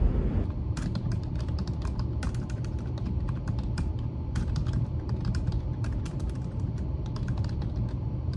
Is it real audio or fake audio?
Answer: fake